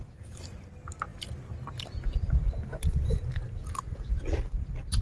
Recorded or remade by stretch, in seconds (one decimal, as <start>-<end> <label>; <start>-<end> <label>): 0.0-5.0 recorded